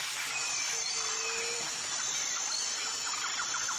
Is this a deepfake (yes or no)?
no